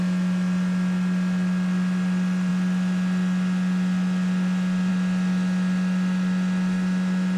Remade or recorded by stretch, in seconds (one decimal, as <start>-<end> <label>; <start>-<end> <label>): 0.0-7.4 recorded